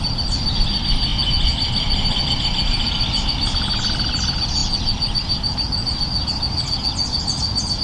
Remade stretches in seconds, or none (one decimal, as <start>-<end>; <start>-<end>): none